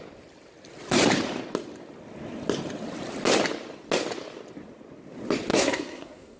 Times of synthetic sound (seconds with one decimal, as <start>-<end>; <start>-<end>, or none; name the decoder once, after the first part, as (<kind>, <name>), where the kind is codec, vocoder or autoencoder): 5.5-6.4 (codec, SNAC)